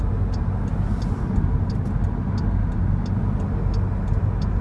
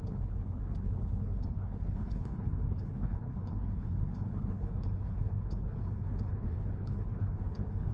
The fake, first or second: second